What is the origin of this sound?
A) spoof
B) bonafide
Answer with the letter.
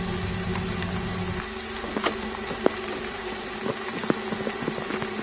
B